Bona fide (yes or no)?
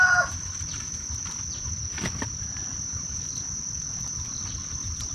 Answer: yes